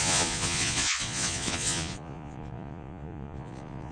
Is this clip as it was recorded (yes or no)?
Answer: no